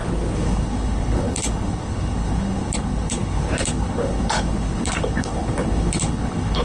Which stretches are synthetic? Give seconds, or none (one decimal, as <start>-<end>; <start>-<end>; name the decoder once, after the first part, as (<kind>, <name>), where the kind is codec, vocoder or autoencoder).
0.0-6.6 (codec, HILCodec)